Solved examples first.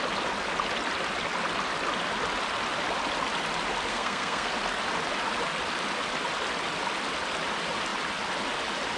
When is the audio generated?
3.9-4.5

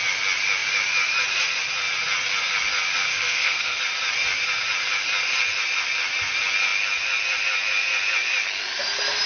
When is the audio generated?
3.1-3.8

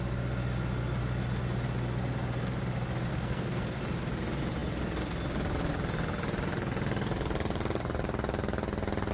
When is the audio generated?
3.1-3.8